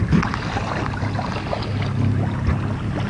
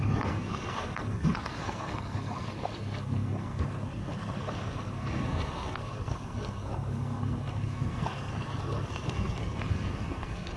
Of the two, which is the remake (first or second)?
second